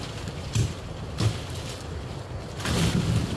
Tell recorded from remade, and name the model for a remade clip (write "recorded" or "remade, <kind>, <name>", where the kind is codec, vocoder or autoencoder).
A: recorded